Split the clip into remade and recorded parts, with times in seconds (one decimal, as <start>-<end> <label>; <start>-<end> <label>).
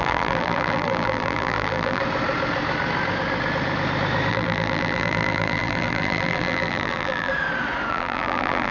0.0-2.0 remade; 2.0-4.3 recorded; 4.3-7.3 remade; 7.3-7.9 recorded; 7.9-8.7 remade